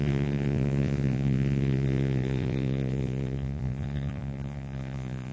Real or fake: fake